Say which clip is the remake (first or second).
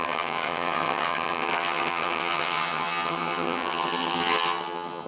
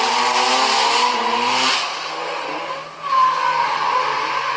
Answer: first